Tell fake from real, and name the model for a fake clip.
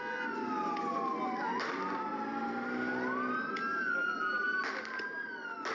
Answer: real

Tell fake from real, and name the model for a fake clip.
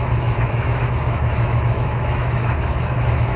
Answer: fake, autoencoder, DAC-VAE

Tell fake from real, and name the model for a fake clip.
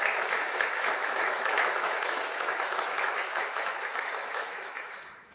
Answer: fake, autoencoder, DAC-VAE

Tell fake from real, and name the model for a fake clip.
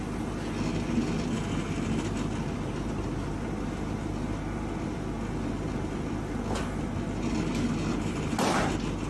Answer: real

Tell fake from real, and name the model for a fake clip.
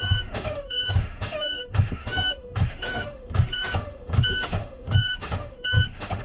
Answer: fake, autoencoder, DAC-VAE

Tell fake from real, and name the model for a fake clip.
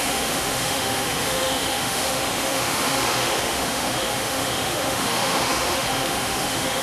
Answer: fake, autoencoder, DAC-VAE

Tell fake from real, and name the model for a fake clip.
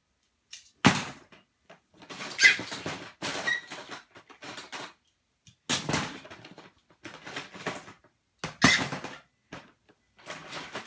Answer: real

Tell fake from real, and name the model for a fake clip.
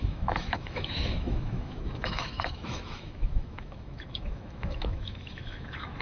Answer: fake, autoencoder, DAC-VAE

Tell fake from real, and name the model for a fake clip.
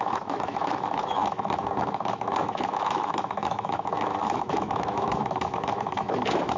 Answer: fake, autoencoder, DAC-VAE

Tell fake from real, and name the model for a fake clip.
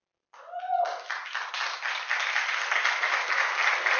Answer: real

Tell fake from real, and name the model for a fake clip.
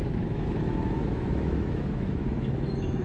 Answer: fake, autoencoder, DAC-VAE